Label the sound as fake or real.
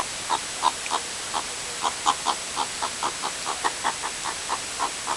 real